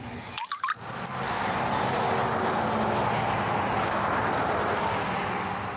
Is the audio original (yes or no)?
yes